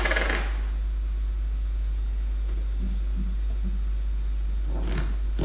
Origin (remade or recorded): recorded